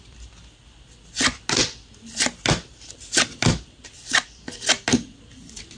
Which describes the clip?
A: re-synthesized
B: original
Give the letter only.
B